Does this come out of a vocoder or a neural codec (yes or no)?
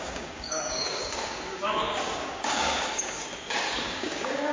yes